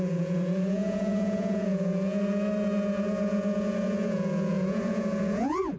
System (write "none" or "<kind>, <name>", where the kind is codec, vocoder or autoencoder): vocoder, Vocos